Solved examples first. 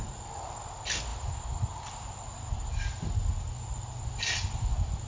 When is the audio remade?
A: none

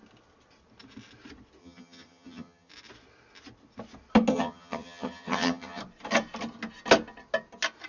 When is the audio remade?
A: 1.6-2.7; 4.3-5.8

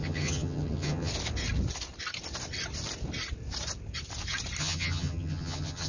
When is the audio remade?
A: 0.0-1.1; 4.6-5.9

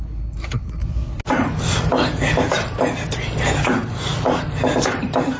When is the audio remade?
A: none